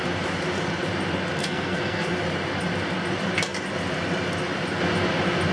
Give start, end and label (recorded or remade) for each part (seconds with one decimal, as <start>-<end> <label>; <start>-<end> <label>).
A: 0.0-1.4 recorded; 1.4-2.1 remade; 2.1-5.5 recorded